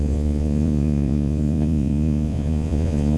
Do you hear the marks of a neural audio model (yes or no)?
yes